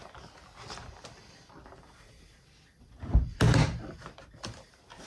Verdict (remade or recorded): recorded